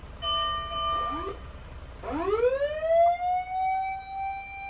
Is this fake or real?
real